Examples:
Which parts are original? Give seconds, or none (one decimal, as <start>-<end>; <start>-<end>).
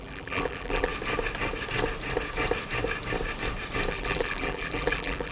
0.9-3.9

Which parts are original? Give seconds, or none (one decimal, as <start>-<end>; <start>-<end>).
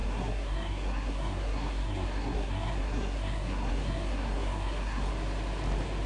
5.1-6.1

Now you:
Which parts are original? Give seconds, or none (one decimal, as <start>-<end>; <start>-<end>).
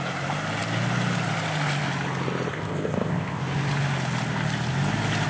0.0-2.5; 3.4-5.3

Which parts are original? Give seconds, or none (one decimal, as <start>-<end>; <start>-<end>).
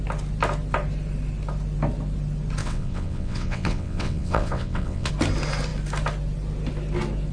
0.0-2.6; 5.1-7.3